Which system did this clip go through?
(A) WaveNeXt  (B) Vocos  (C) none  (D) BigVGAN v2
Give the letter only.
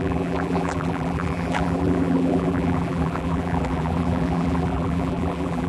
D